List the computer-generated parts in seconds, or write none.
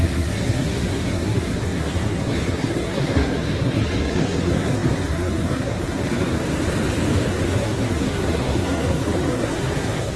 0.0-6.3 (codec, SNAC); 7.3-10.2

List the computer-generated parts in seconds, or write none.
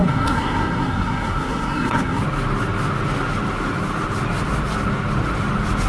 0.0-2.2 (codec, SNAC)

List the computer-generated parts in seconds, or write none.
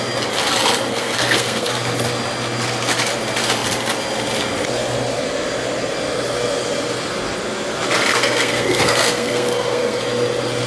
0.9-1.7 (codec, SNAC); 8.1-10.0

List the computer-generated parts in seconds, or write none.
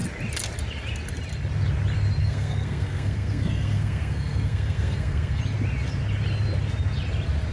2.2-5.4 (codec, SNAC)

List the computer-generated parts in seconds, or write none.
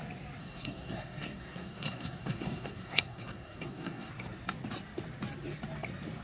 0.4-4.1 (codec, SNAC)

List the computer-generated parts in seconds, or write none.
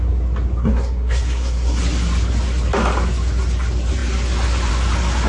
0.6-1.8 (codec, SNAC)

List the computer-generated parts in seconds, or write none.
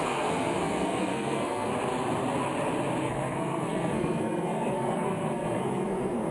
0.0-1.7 (codec, SNAC); 3.0-6.3